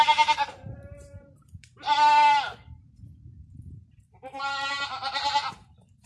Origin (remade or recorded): remade